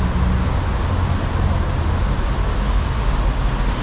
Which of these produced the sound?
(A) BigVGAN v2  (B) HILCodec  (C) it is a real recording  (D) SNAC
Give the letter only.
C